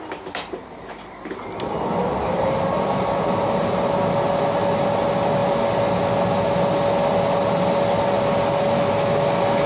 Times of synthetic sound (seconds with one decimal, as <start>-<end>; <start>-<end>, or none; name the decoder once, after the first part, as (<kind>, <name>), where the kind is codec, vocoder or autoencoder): none